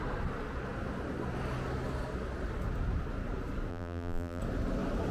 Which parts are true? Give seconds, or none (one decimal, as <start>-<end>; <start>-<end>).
0.0-3.7; 4.4-5.1